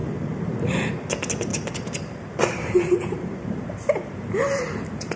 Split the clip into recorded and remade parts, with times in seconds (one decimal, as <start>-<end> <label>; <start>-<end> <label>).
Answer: 0.0-0.6 remade; 0.6-1.5 recorded; 1.5-4.6 remade; 4.6-5.2 recorded